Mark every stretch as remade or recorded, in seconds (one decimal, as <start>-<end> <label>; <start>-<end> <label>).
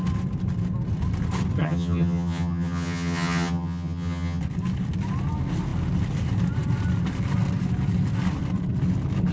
0.0-1.6 recorded; 1.6-4.4 remade; 4.4-9.3 recorded